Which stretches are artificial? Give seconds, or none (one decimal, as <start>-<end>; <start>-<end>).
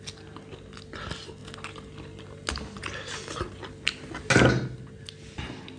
none